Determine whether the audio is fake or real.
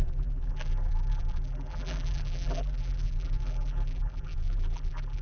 fake